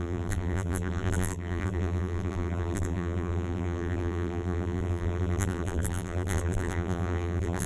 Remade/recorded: remade